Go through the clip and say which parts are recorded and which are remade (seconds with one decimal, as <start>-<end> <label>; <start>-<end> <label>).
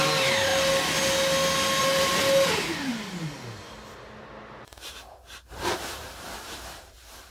0.0-0.5 remade; 0.5-1.8 recorded; 1.8-2.2 remade; 2.2-5.5 recorded; 5.5-7.3 remade